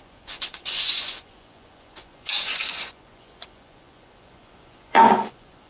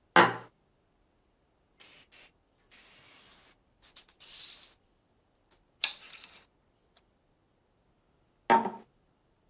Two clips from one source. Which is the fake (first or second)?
first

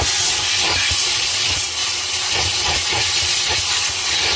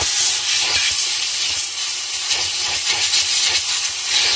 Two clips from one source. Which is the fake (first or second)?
first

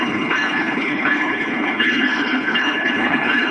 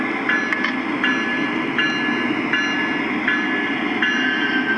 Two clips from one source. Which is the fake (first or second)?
first